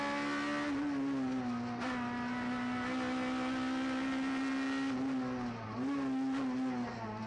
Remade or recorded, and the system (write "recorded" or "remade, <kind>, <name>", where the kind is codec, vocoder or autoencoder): recorded